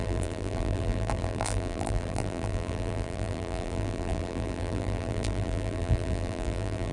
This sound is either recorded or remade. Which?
remade